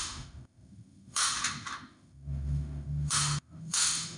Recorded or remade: remade